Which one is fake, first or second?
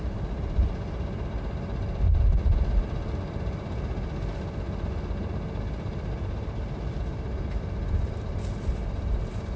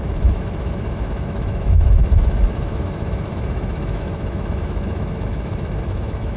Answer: second